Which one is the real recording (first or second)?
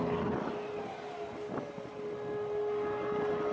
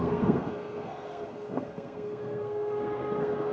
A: first